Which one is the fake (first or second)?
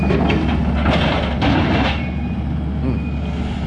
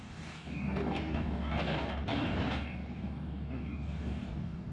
second